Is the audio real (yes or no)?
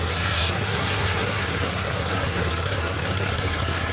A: no